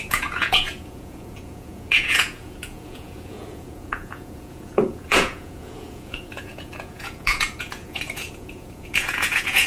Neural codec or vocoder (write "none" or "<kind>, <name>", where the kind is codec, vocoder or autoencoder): vocoder, Vocos